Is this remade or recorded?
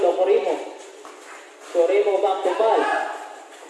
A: recorded